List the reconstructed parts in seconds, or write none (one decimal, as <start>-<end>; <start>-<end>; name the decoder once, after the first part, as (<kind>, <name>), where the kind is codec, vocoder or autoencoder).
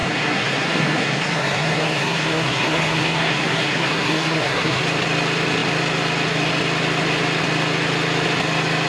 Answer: 0.0-4.8 (codec, SNAC)